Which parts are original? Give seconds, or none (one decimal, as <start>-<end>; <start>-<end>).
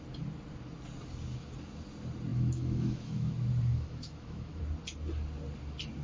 0.0-2.3; 3.3-3.7; 4.6-6.0